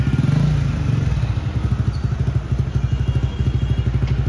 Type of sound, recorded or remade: recorded